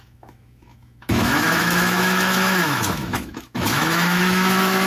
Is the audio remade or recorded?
remade